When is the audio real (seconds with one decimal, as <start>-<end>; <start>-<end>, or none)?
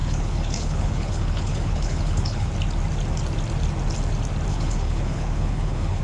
2.5-4.5